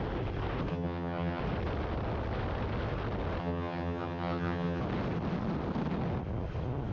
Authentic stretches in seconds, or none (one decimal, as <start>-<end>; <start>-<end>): 0.0-0.7; 1.4-3.4; 4.8-6.9